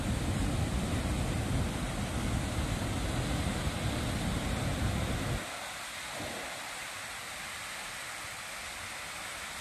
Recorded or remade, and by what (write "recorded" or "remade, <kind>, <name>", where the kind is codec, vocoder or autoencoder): recorded